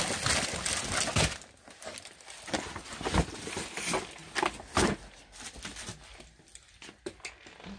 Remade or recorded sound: recorded